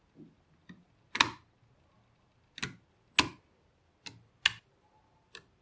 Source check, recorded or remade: recorded